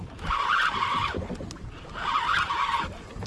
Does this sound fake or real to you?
real